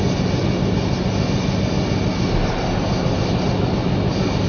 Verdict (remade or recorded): recorded